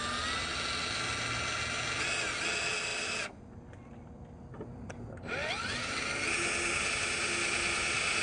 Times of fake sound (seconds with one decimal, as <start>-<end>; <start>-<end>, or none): none